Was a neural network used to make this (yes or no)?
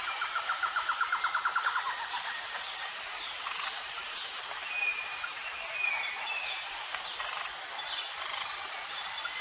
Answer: no